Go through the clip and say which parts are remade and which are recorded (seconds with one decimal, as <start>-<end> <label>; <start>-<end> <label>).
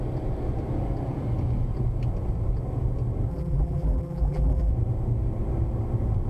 0.0-3.3 recorded; 3.3-4.7 remade; 4.7-6.3 recorded